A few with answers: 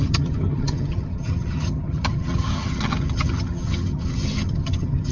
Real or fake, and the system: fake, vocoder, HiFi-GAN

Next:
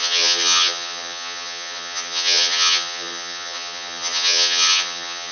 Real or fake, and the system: fake, vocoder, HiFi-GAN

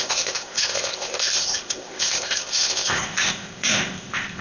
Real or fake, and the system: fake, codec, ZipCodec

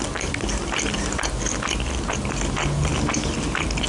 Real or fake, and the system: real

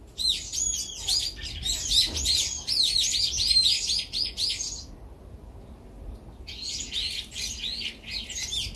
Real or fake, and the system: real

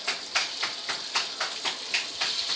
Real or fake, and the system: real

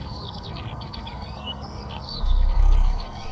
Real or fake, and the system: fake, codec, SNAC